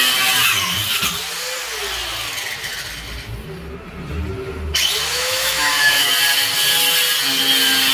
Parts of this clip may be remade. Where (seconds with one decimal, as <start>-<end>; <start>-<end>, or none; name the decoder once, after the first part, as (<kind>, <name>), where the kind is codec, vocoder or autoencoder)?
5.1-6.1 (autoencoder, DAC-VAE)